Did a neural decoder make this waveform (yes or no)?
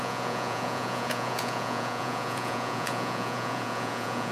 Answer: yes